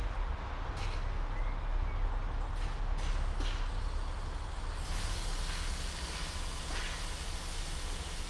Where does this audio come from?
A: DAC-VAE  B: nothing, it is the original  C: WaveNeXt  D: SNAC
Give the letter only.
B